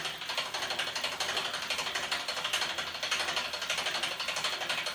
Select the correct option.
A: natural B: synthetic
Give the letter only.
A